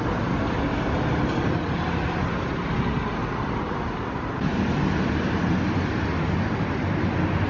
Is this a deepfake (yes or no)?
no